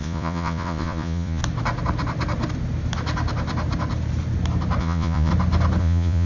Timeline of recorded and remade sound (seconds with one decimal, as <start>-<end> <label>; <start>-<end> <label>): 0.0-1.4 remade; 1.4-4.8 recorded; 4.8-5.3 remade; 5.3-5.8 recorded; 5.8-6.3 remade